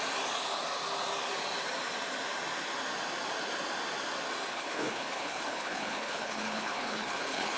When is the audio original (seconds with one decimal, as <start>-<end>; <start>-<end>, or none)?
0.0-4.5